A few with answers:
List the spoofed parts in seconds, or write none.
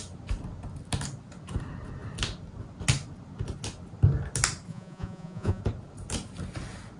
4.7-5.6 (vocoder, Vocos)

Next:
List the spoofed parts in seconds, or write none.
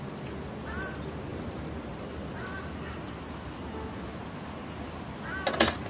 none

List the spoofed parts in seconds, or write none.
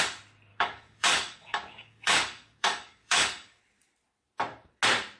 0.5-3.6 (codec, DAC)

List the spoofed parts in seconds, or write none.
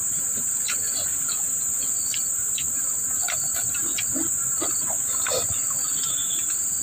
none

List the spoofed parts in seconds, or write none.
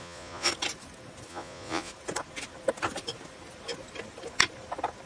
0.0-0.5 (vocoder, Vocos); 1.3-1.9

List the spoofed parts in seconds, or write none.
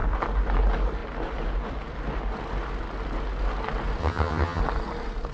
4.0-4.6 (vocoder, HiFi-GAN)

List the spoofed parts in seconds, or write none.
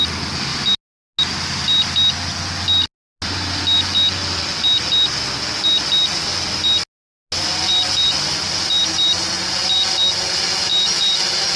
none